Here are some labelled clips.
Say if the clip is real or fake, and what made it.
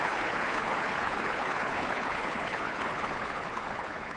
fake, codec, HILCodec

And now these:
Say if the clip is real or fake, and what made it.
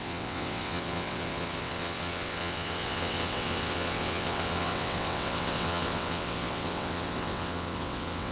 fake, vocoder, WaveNeXt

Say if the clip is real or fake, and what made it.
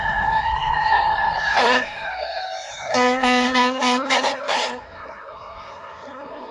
fake, codec, SNAC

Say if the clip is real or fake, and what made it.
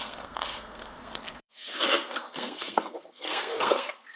fake, codec, SNAC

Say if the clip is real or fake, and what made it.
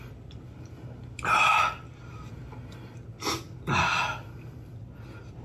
real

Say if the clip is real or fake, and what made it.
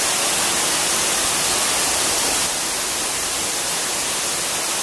real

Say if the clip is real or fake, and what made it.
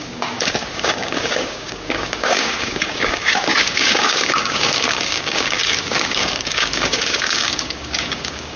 fake, codec, DAC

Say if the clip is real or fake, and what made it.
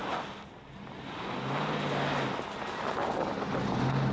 real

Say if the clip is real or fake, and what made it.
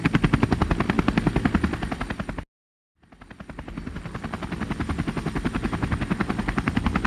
real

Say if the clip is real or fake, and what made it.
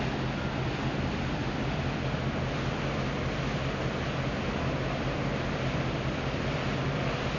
real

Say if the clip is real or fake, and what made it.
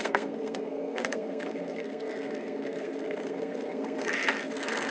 fake, codec, SNAC